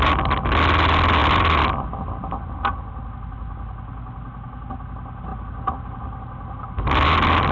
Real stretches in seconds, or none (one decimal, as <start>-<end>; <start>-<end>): 0.0-7.5